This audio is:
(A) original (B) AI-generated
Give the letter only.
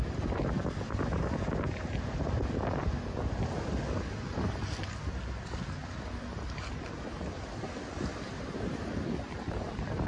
A